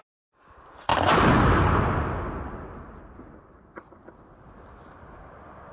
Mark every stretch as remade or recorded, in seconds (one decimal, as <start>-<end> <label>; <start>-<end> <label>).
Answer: 0.0-5.7 recorded